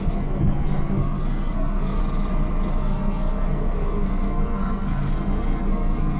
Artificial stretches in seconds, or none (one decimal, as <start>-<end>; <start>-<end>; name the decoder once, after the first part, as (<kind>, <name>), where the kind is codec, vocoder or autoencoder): 0.0-2.0 (codec, SNAC); 2.8-6.2